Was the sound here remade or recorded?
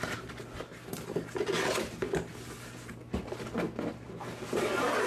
recorded